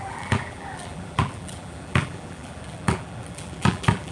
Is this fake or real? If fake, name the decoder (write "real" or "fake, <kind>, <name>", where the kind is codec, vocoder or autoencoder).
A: fake, vocoder, BigVGAN v2